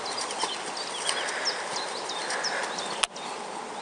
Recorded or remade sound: recorded